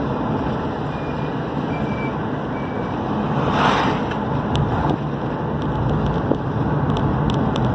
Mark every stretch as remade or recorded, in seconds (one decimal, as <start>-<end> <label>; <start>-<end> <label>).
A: 0.0-7.7 recorded